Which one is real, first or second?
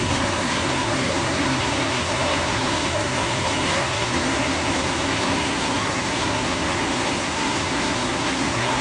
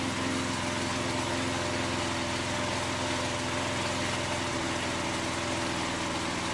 second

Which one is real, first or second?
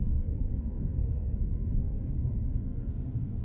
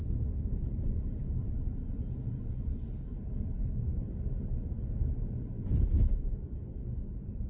second